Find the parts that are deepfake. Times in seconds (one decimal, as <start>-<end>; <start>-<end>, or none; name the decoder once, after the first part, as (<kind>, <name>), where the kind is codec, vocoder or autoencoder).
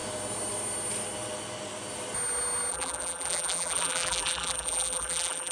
2.7-5.5 (vocoder, BigVGAN v2)